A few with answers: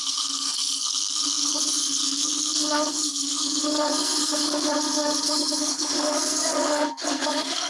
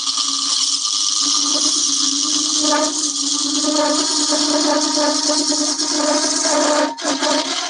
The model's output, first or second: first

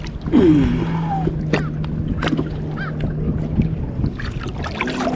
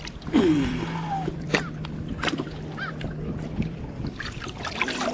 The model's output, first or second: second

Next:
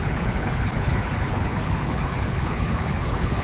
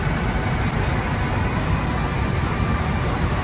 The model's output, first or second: first